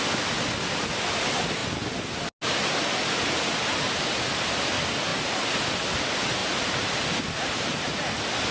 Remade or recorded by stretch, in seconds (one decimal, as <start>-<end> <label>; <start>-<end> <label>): 0.0-5.1 recorded; 5.1-5.6 remade; 5.6-6.4 recorded; 6.4-7.8 remade; 7.8-8.5 recorded